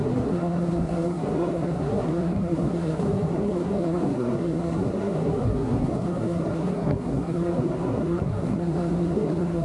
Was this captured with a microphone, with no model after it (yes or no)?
no